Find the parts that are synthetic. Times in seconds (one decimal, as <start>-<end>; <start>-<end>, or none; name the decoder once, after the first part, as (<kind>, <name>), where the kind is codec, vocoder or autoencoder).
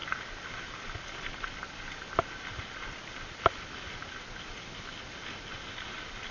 none